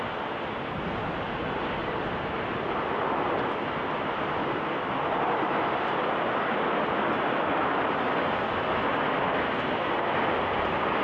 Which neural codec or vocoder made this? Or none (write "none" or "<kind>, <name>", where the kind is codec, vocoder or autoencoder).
none